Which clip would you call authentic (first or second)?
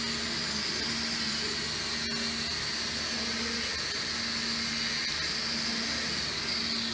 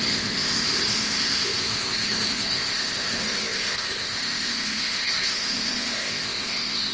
first